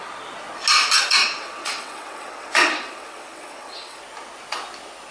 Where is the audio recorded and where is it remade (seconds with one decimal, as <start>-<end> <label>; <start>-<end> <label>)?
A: 0.0-1.2 recorded; 1.2-4.0 remade; 4.0-5.1 recorded